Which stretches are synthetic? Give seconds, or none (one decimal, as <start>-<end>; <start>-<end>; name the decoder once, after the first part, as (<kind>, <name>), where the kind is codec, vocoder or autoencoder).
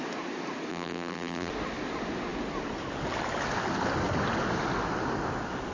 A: 0.7-1.5 (vocoder, BigVGAN v2)